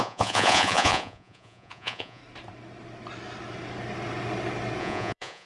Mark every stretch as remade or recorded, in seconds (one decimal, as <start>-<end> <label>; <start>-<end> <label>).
0.0-2.2 remade; 2.2-4.8 recorded; 4.8-5.5 remade